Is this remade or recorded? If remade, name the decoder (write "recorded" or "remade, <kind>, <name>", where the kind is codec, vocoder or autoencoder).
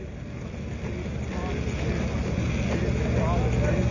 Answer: recorded